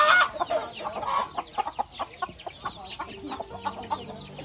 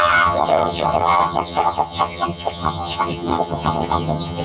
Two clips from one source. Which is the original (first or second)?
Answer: first